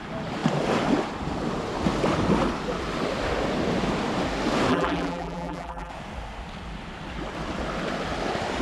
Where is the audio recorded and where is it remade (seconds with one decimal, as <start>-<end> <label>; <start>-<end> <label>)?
0.0-4.7 recorded; 4.7-5.9 remade; 5.9-8.6 recorded